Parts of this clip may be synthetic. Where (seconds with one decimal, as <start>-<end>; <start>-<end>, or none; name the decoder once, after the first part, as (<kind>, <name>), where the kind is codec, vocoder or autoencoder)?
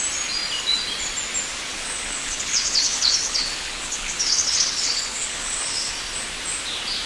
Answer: 1.7-5.9 (codec, HILCodec)